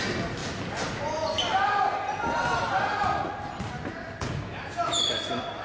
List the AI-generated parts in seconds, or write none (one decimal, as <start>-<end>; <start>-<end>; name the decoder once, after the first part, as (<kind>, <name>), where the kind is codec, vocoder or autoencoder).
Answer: 2.9-3.4 (vocoder, Vocos)